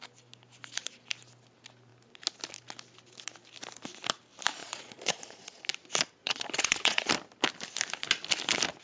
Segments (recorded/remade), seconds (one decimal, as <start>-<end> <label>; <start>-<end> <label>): 0.0-4.6 recorded; 4.6-5.6 remade; 5.6-6.2 recorded; 6.2-7.1 remade; 7.1-8.8 recorded